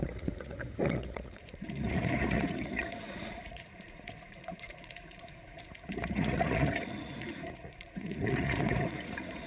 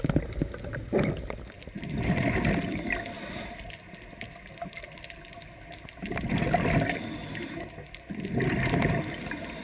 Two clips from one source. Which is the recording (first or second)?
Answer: second